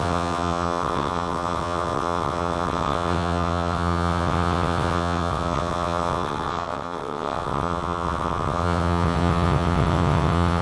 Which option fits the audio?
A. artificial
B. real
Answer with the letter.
A